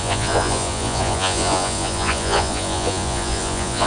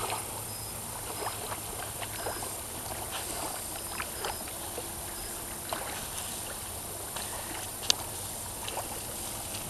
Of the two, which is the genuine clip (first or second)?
second